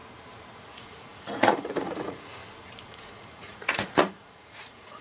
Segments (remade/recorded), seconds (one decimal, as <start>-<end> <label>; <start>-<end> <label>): 0.0-0.6 recorded; 0.6-2.4 remade; 2.4-2.9 recorded; 2.9-5.0 remade